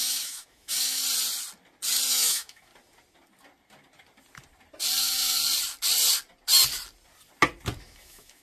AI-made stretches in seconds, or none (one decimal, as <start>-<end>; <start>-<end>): 0.0-1.0; 2.1-2.7; 5.0-5.4; 7.8-8.4